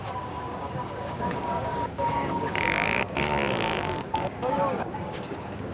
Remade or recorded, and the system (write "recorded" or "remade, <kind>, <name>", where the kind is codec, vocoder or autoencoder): remade, codec, DAC